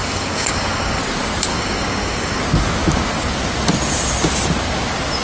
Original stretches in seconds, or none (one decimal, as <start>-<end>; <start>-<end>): 1.0-1.5; 2.4-5.2